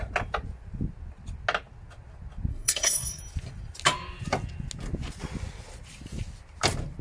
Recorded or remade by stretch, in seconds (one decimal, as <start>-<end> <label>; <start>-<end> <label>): 0.0-2.5 recorded; 2.5-3.2 remade; 3.2-7.0 recorded